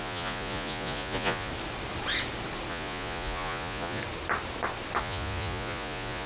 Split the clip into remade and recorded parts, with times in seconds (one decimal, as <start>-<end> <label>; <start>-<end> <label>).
0.0-1.5 remade; 1.5-2.7 recorded; 2.7-4.0 remade; 4.0-5.0 recorded; 5.0-6.3 remade